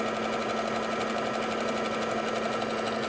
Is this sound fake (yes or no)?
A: no